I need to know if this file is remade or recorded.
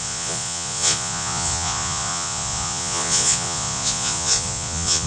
remade